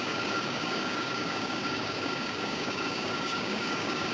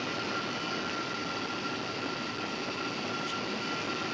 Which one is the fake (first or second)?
first